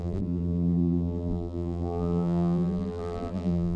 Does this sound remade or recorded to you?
remade